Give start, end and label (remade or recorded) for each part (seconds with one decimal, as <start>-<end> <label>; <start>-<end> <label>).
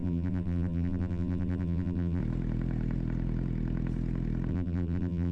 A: 0.0-2.2 remade; 2.2-4.5 recorded; 4.5-5.3 remade